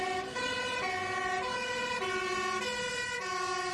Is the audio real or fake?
real